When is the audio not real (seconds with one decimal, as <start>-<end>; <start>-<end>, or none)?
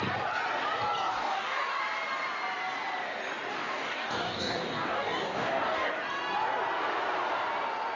1.1-1.8; 3.5-5.9